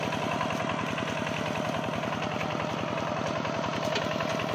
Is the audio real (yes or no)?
yes